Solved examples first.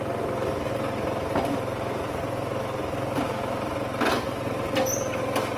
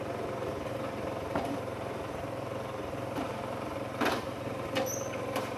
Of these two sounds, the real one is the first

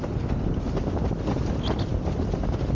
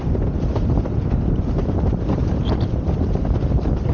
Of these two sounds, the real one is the first